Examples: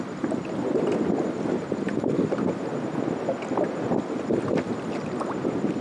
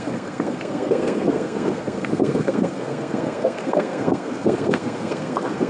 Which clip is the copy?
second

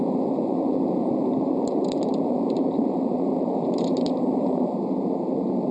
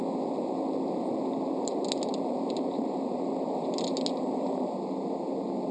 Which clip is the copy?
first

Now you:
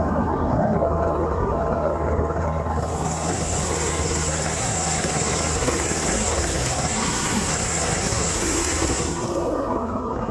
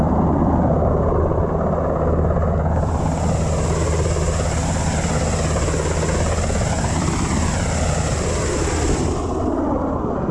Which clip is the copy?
first